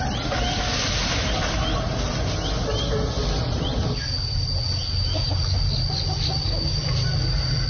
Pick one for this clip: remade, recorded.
recorded